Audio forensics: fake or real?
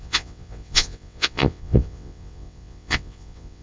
fake